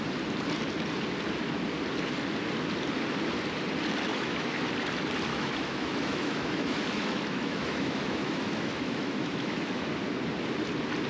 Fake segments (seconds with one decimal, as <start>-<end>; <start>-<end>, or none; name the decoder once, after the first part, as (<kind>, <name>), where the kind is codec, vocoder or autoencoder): 4.1-4.6 (autoencoder, DAC-VAE); 5.3-9.9